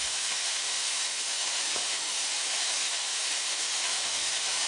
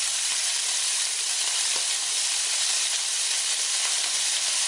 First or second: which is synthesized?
first